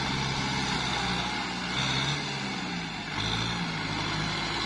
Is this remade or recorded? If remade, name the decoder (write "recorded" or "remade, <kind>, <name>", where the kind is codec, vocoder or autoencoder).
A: recorded